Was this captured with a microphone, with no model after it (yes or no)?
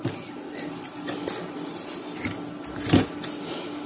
yes